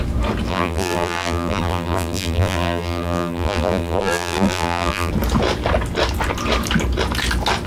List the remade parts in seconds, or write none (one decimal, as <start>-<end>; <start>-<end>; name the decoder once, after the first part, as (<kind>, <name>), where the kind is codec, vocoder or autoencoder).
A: 0.5-5.1 (vocoder, BigVGAN v2)